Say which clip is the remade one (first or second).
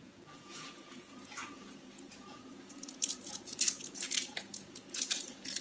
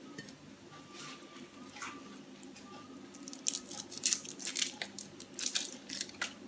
first